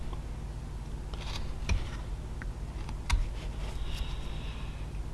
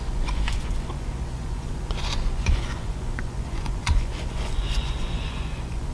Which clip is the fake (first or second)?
second